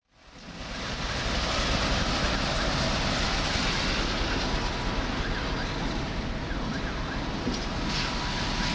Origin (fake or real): real